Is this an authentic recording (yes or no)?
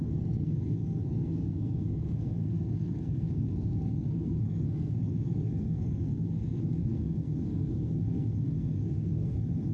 no